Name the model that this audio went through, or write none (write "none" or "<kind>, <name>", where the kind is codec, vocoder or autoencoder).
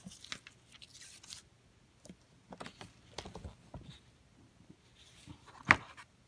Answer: none